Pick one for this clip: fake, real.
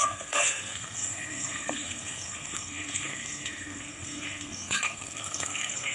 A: fake